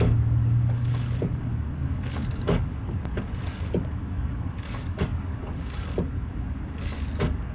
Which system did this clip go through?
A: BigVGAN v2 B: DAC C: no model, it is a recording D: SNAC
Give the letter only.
B